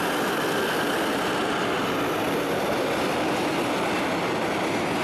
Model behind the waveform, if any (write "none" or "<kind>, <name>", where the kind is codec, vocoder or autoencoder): none